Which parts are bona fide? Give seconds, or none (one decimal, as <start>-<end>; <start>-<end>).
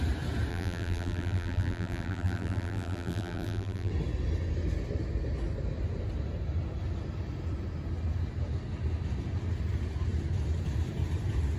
0.0-0.5; 3.9-11.6